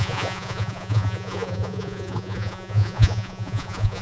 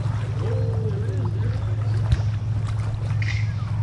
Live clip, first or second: second